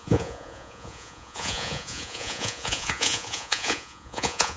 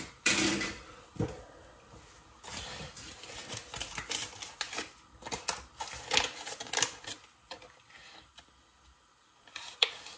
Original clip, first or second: second